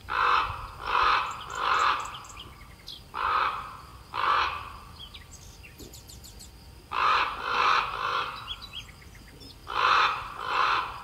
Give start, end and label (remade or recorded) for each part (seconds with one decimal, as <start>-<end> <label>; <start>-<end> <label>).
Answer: 0.0-1.8 recorded; 1.8-2.8 remade; 2.8-11.0 recorded